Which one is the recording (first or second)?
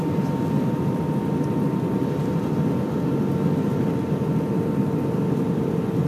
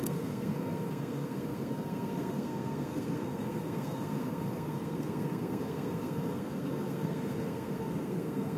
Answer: first